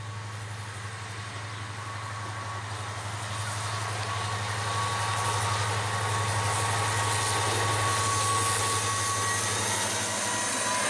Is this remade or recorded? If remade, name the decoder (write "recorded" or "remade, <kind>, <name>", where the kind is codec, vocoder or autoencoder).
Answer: recorded